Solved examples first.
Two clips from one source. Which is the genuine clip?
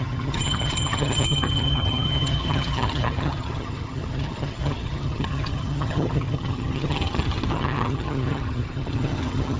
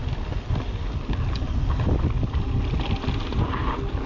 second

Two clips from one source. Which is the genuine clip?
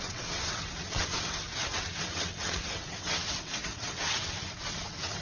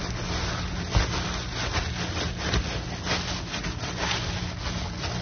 second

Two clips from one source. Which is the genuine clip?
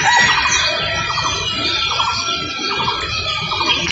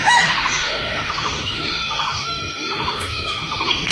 first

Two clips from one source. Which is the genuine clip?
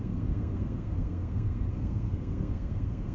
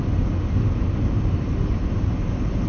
second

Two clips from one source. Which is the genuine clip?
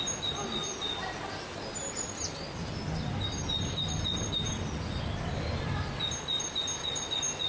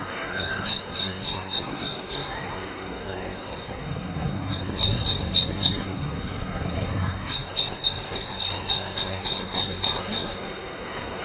first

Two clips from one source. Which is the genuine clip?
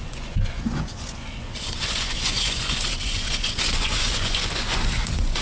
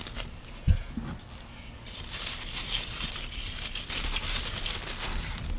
second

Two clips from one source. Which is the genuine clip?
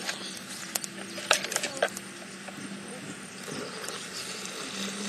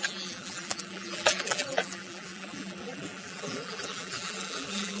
first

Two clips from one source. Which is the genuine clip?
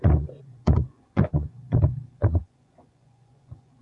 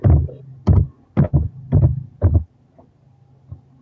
second